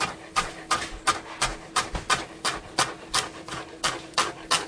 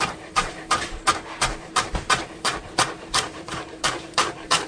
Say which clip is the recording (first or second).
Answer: first